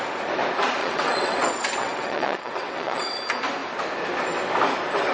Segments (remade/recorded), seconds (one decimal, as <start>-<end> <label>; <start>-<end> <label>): 0.0-0.8 recorded; 0.8-3.2 remade; 3.2-5.1 recorded